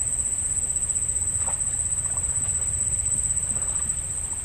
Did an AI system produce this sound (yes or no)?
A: no